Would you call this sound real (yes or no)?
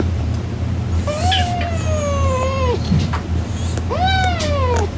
yes